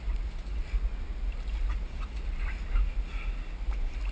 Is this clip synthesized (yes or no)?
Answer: no